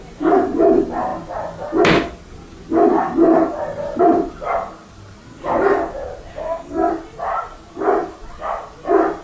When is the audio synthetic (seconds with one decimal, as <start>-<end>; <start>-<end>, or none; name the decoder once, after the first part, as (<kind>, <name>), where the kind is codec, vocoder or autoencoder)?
6.4-6.9 (codec, SNAC)